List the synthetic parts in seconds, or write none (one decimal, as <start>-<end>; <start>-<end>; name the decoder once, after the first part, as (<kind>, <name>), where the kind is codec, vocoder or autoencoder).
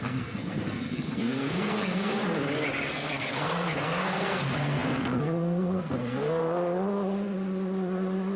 0.0-2.1 (codec, SNAC); 2.8-6.4